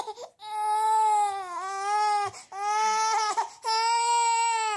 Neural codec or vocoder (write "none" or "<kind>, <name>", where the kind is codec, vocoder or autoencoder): none